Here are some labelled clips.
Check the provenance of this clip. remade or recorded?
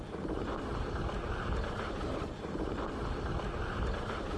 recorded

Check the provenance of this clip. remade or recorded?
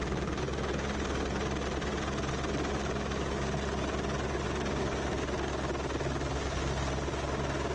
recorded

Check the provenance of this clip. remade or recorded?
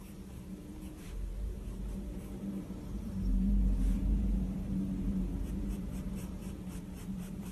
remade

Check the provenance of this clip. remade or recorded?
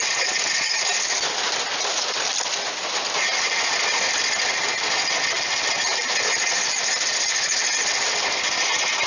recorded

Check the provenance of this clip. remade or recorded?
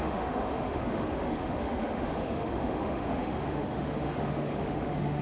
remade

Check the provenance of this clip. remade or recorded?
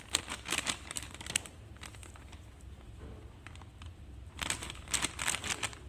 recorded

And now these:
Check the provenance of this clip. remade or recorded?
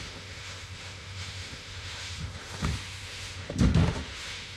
remade